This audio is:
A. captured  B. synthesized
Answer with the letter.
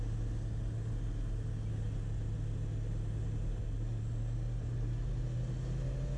A